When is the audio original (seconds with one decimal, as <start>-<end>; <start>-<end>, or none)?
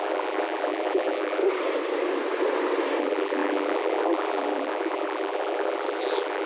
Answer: 1.4-3.0